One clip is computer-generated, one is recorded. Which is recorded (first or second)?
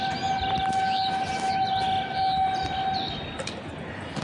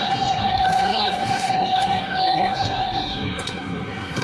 first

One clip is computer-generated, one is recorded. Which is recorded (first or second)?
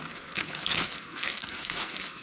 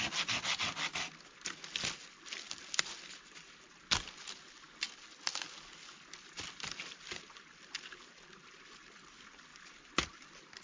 second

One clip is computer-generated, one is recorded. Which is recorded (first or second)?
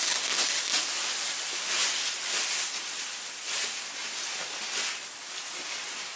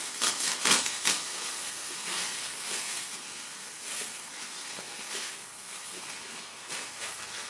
first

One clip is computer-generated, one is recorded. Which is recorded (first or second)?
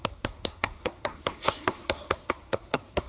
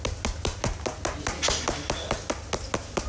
second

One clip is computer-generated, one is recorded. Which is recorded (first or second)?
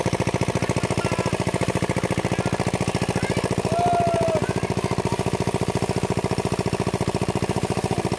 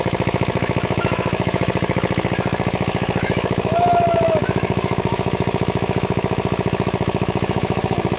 first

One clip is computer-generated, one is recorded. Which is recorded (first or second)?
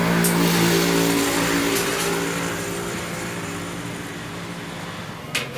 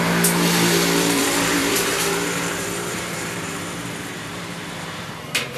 first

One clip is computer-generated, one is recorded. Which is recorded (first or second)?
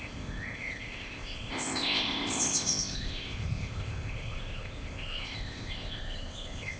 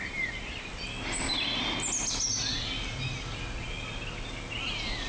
second